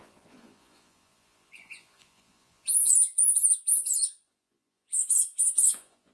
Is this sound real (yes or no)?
no